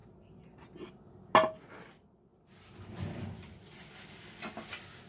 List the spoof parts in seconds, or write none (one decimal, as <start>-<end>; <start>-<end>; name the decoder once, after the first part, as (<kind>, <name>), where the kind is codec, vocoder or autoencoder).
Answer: none